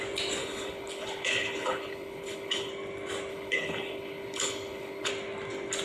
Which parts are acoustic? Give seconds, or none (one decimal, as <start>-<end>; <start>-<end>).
0.0-0.4; 2.7-3.3; 5.1-5.8